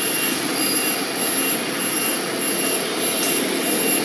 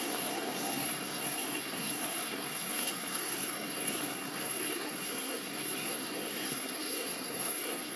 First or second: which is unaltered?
first